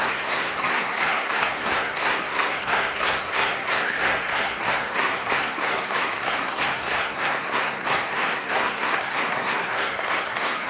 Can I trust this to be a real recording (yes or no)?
no